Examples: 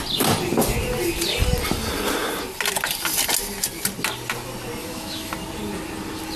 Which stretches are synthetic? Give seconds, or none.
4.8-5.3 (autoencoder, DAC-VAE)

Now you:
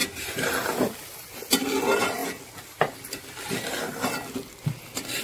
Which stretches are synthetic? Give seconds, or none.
0.0-0.8 (vocoder, BigVGAN v2)